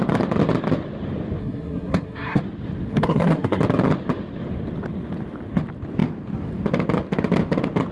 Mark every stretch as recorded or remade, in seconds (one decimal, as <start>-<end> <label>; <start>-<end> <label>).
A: 0.0-1.4 recorded; 1.4-2.4 remade; 2.4-2.9 recorded; 2.9-3.6 remade; 3.6-7.9 recorded